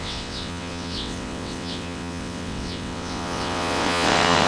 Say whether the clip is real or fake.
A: fake